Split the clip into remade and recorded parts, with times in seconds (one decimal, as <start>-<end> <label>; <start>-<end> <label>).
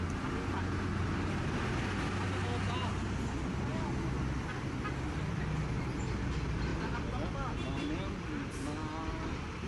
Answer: 0.0-9.7 recorded